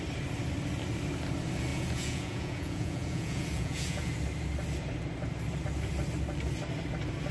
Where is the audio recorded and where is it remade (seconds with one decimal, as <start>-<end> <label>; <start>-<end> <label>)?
0.0-1.7 recorded; 1.7-4.1 remade; 4.1-7.3 recorded